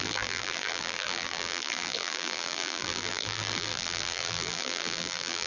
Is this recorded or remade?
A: remade